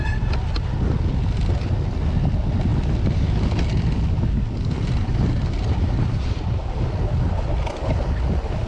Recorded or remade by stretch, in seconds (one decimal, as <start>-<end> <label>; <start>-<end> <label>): 0.0-8.7 recorded